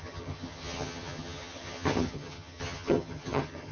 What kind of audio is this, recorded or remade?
remade